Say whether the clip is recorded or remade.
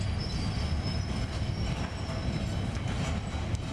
recorded